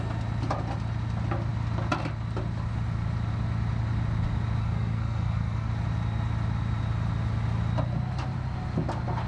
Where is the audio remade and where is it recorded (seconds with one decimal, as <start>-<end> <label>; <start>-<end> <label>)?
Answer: 0.0-4.6 recorded; 4.6-5.7 remade; 5.7-9.3 recorded